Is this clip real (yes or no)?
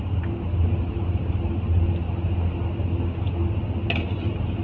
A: yes